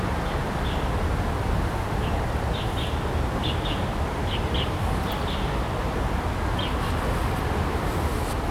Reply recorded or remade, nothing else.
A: recorded